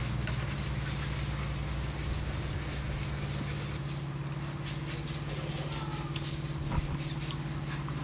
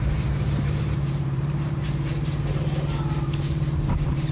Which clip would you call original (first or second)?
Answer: first